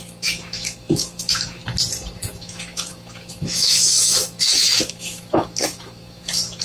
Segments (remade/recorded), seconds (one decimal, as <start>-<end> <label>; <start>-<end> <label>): 0.0-1.6 remade; 1.6-2.3 recorded; 2.3-6.6 remade